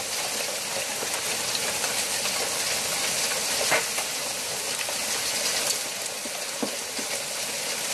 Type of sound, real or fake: real